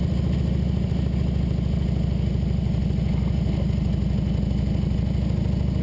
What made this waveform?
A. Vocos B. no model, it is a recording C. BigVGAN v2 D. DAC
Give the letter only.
B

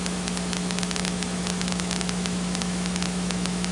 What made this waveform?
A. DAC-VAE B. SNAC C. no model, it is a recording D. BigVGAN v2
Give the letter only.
A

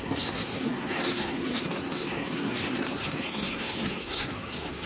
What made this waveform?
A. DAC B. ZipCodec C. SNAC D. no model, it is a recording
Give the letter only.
C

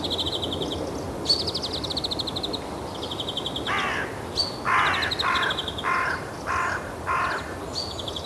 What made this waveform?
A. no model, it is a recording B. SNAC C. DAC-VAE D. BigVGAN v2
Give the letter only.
A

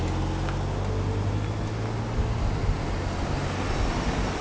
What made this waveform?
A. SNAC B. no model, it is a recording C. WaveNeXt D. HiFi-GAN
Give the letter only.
B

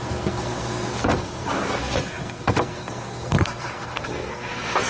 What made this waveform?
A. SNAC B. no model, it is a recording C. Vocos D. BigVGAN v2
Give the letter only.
A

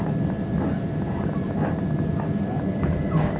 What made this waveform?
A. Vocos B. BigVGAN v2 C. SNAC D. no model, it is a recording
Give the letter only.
D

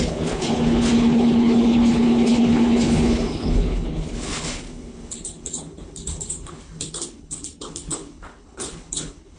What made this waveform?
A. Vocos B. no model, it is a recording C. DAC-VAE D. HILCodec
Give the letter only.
D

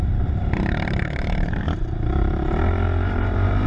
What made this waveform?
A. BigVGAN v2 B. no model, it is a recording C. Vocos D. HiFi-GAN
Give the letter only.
A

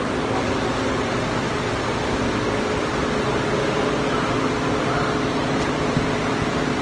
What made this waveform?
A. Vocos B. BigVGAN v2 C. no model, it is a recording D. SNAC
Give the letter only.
C